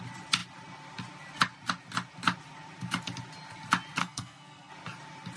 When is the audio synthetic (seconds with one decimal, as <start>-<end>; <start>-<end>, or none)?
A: 4.0-4.7